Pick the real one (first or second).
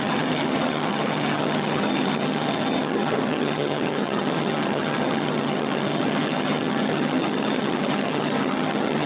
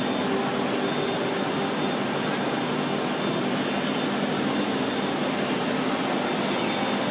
second